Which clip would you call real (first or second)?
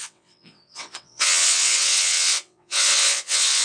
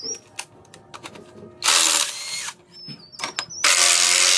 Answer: second